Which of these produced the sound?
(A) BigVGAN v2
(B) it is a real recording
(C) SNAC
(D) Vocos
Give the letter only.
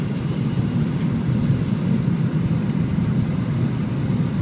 B